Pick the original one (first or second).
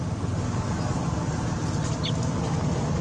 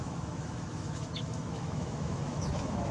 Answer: first